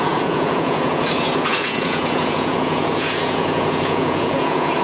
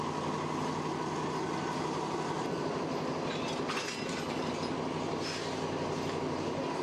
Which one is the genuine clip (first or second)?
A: second